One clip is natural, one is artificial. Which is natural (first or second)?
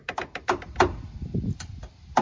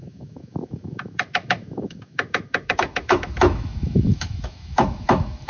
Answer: first